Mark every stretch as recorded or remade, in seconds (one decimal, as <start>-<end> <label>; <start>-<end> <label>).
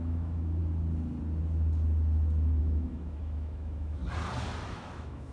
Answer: 0.0-0.6 remade; 0.6-2.6 recorded; 2.6-4.0 remade; 4.0-4.7 recorded; 4.7-5.3 remade